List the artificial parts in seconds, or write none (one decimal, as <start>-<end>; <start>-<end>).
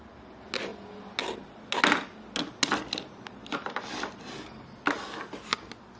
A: none